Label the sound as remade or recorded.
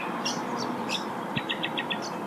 remade